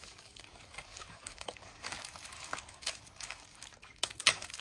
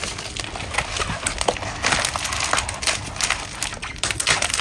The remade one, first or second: first